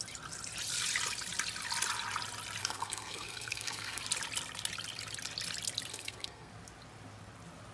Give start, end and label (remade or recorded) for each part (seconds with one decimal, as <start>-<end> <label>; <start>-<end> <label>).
0.0-2.6 recorded; 2.6-4.0 remade; 4.0-5.9 recorded; 5.9-6.5 remade; 6.5-7.7 recorded